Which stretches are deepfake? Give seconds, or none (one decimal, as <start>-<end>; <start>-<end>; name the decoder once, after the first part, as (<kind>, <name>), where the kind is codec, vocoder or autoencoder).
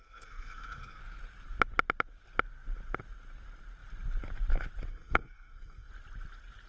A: 0.0-1.0 (codec, SNAC); 4.9-5.9